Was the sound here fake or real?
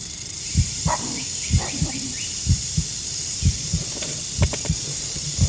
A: fake